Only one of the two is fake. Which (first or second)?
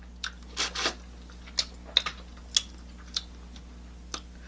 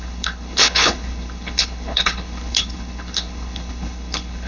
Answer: second